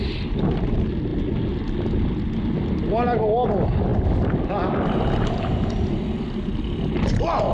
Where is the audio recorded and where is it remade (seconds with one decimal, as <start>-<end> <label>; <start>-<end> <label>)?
0.0-3.9 recorded; 3.9-6.0 remade; 6.0-7.5 recorded

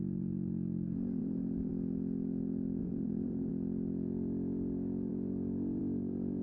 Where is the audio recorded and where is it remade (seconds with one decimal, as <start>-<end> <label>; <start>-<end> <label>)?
0.0-1.2 recorded; 1.2-1.7 remade; 1.7-2.8 recorded; 2.8-3.5 remade; 3.5-6.4 recorded